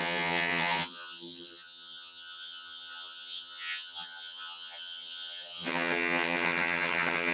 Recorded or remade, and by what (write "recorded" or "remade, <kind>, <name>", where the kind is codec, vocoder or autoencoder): remade, vocoder, HiFi-GAN